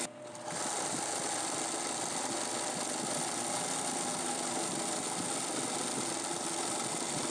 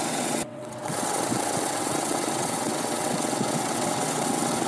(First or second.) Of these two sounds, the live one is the first